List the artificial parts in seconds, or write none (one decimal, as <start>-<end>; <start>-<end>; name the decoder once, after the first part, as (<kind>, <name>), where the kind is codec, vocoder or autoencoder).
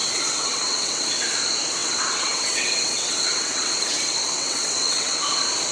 0.0-1.1 (vocoder, WaveNeXt); 1.8-5.2